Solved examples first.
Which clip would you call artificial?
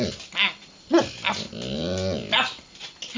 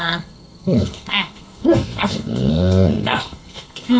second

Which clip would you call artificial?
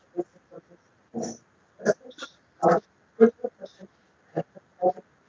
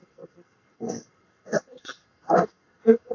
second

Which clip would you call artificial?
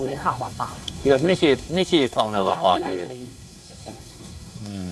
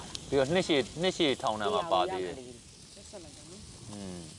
first